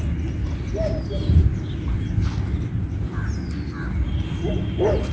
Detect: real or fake real